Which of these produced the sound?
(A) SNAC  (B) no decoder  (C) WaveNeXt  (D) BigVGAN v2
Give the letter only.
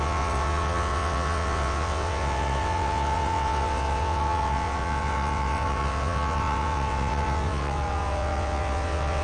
C